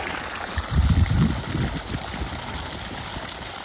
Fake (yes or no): no